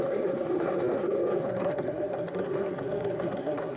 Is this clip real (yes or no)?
no